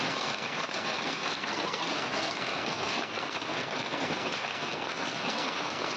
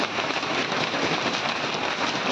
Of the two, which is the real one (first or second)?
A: second